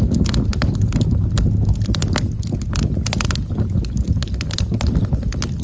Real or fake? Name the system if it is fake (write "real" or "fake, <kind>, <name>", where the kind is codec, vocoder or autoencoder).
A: real